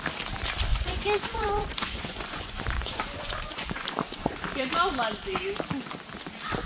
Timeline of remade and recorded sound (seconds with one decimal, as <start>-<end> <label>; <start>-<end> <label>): 0.0-0.7 recorded; 0.7-4.7 remade; 4.7-6.7 recorded